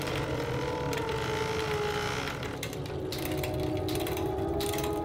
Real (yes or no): yes